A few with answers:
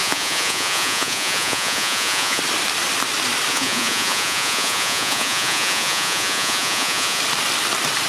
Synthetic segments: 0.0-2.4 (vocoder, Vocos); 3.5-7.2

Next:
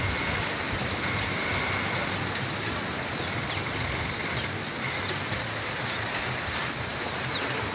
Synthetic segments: none

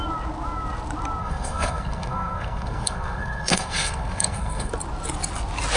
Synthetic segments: 1.2-4.7 (codec, SNAC)

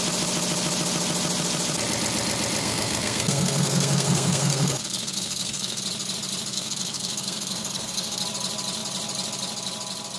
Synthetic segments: 2.6-5.8 (codec, SNAC); 6.5-8.2